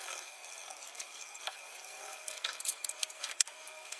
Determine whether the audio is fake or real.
fake